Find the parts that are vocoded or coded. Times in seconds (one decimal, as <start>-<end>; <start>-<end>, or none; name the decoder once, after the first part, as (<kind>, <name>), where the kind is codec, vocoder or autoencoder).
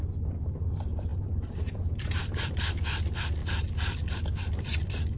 1.1-2.4 (vocoder, BigVGAN v2)